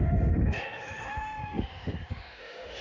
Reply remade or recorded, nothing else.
remade